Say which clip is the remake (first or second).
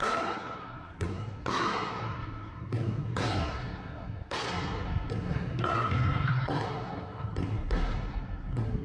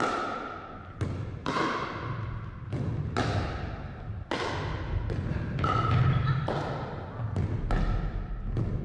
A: first